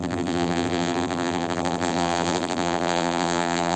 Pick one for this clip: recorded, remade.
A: remade